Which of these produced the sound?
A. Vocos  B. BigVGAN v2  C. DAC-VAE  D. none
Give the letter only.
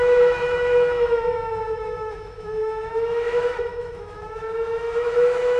C